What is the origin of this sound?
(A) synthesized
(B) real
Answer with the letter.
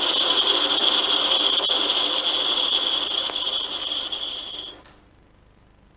B